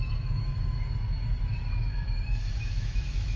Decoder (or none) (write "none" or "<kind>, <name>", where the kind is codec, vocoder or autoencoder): autoencoder, DAC-VAE